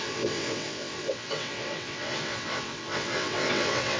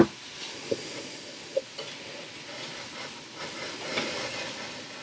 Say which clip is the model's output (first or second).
first